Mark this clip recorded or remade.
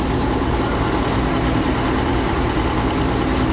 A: recorded